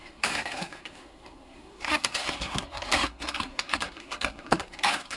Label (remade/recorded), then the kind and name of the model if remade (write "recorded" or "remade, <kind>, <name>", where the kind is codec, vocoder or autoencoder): remade, codec, SNAC